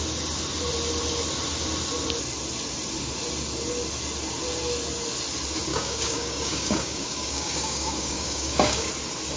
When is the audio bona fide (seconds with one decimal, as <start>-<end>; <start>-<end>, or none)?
0.0-5.7; 8.9-9.4